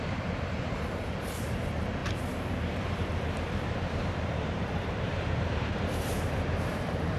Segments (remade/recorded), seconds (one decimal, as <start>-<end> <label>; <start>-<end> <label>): 0.0-7.2 remade